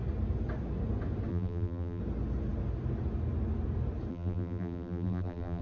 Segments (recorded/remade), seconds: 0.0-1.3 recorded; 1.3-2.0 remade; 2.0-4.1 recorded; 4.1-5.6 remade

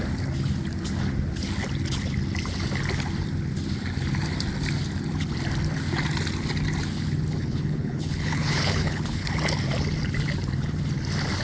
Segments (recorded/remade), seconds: 0.0-7.4 recorded; 7.4-9.3 remade; 9.3-11.4 recorded